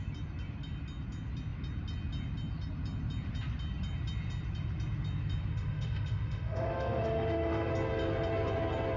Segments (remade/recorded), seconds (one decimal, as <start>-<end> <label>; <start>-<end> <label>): 0.0-5.5 recorded; 5.5-7.7 remade; 7.7-9.0 recorded